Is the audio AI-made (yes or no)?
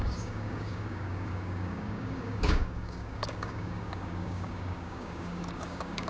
yes